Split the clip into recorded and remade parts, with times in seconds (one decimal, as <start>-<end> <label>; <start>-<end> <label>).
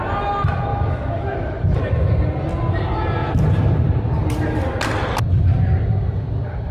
0.0-0.7 recorded; 0.7-1.8 remade; 1.8-6.7 recorded